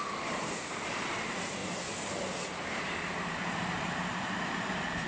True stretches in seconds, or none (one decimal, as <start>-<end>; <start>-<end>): 1.6-2.8